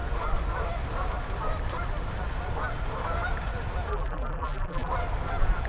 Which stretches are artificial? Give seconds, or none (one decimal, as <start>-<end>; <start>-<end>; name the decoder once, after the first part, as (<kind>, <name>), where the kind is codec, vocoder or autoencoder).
3.9-4.9 (vocoder, BigVGAN v2)